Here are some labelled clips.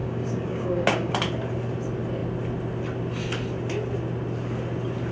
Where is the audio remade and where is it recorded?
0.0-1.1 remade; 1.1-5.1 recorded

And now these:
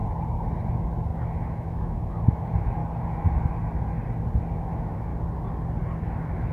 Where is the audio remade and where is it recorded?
0.0-0.7 recorded; 0.7-2.8 remade; 2.8-4.5 recorded; 4.5-5.1 remade; 5.1-6.1 recorded; 6.1-6.5 remade

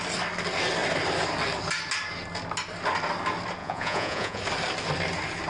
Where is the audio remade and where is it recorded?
0.0-3.6 recorded; 3.6-4.4 remade; 4.4-5.5 recorded

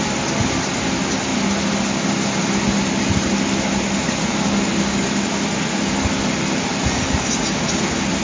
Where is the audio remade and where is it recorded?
0.0-8.2 recorded